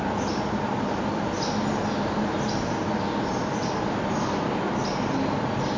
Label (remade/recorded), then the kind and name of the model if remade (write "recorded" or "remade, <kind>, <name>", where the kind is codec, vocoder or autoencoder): recorded